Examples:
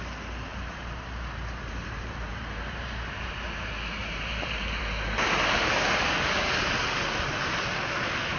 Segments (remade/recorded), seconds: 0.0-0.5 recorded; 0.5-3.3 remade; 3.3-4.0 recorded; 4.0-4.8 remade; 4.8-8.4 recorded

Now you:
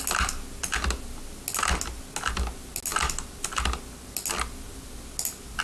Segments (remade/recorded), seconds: 0.0-5.6 recorded

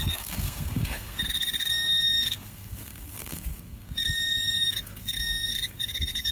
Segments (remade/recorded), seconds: 0.0-6.3 remade

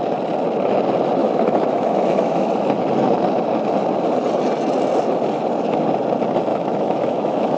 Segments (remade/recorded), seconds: 0.0-1.2 recorded; 1.2-2.5 remade; 2.5-6.5 recorded; 6.5-7.6 remade